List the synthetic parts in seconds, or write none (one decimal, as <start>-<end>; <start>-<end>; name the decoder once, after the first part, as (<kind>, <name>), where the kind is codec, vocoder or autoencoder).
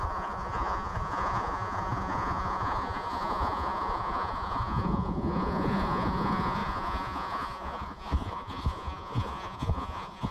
0.0-10.3 (vocoder, Vocos)